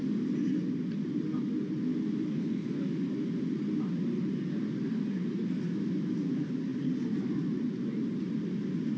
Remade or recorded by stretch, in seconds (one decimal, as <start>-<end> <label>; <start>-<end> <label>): 0.0-2.3 recorded; 2.3-2.8 remade; 2.8-9.0 recorded